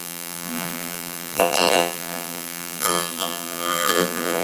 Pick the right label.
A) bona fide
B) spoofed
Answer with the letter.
B